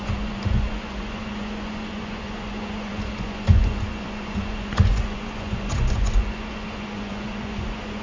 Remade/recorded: remade